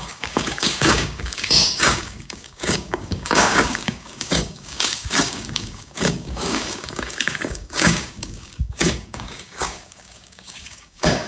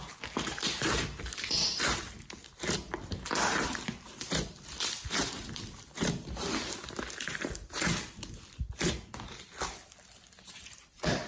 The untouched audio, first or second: second